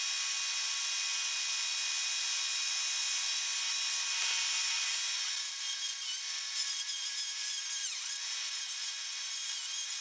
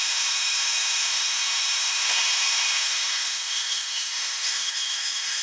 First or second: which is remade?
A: second